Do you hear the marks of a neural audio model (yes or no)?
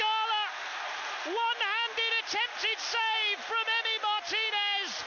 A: no